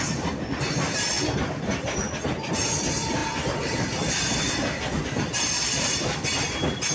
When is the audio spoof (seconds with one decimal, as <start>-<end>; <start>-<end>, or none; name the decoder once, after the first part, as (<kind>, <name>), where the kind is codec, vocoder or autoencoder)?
none